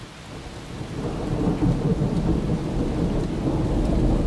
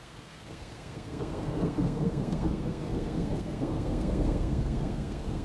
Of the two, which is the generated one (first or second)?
second